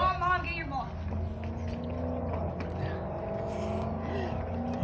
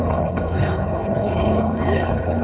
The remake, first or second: second